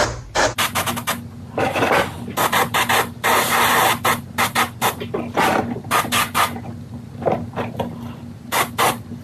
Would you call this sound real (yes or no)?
yes